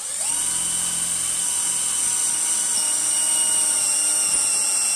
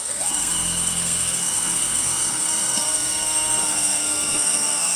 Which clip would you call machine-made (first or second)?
second